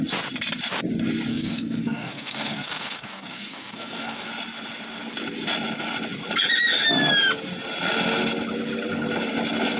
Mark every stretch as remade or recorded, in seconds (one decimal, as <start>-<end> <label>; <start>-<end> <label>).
0.0-1.3 recorded; 1.3-4.3 remade; 4.3-9.8 recorded